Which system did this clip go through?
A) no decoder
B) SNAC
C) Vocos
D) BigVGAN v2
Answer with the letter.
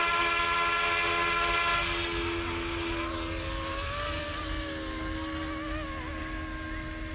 A